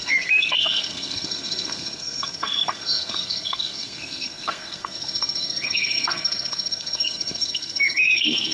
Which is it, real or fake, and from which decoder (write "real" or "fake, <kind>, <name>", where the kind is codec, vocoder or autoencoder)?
fake, codec, SNAC